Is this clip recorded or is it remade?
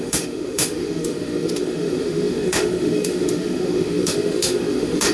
remade